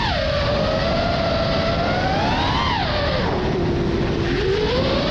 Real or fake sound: real